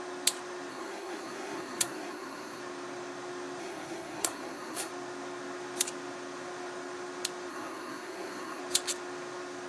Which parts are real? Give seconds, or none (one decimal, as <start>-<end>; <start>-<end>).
0.0-0.7; 2.6-3.6; 4.9-7.5; 8.6-9.7